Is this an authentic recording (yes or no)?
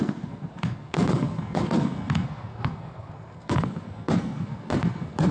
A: no